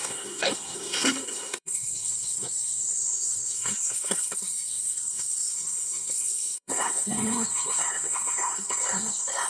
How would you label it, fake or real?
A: fake